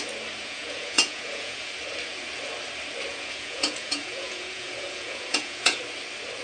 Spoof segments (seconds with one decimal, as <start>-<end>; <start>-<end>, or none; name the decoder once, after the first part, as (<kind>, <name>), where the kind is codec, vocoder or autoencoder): 0.4-1.7 (vocoder, Vocos); 3.1-5.8